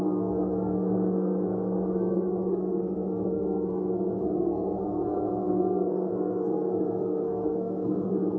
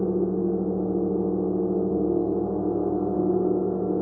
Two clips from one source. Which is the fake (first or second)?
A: first